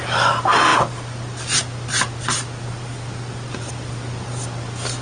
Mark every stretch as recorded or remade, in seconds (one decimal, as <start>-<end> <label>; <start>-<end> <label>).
0.0-5.0 recorded